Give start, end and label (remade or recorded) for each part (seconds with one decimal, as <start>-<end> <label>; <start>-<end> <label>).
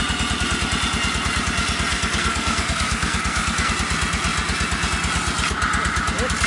0.0-1.9 recorded; 1.9-3.7 remade; 3.7-6.5 recorded